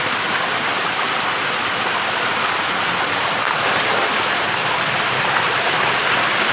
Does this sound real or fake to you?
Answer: fake